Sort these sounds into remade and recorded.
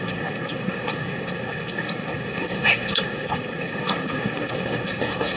remade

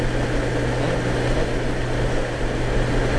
recorded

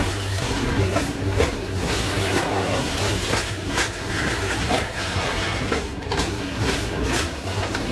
remade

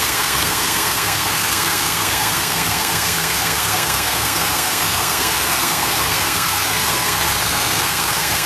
remade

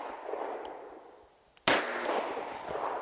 recorded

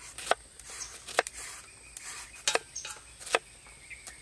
recorded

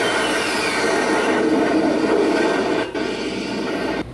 recorded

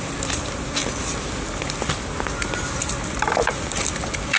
recorded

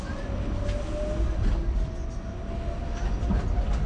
recorded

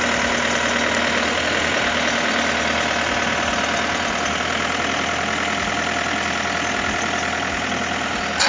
recorded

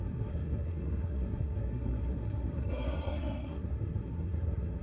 remade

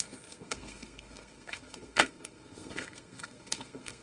remade